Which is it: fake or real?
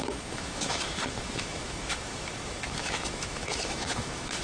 fake